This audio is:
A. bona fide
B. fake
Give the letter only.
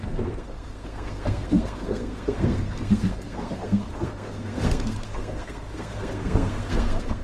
B